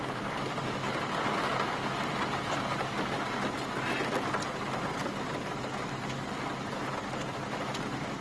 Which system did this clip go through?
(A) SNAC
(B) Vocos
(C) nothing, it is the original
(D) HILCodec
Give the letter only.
C